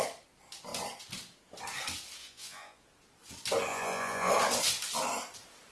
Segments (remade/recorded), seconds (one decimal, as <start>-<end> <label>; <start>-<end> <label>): 0.0-2.2 recorded; 2.2-2.8 remade; 2.8-3.7 recorded; 3.7-4.3 remade; 4.3-5.7 recorded